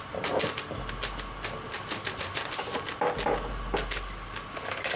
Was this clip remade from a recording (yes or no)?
no